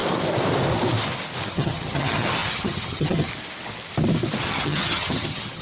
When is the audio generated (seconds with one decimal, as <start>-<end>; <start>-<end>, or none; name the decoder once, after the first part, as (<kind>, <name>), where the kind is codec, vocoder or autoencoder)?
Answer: 1.5-3.3 (vocoder, HiFi-GAN); 4.4-5.6